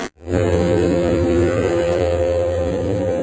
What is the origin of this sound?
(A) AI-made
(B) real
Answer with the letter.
A